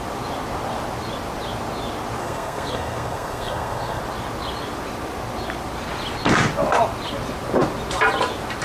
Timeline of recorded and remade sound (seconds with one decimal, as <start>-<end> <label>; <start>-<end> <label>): 0.0-2.2 recorded; 2.2-4.0 remade; 4.0-8.6 recorded